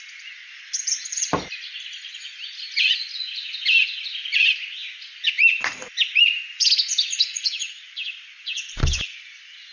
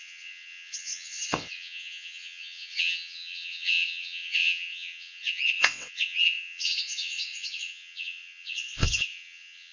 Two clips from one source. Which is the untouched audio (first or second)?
first